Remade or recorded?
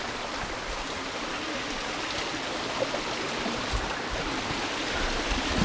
recorded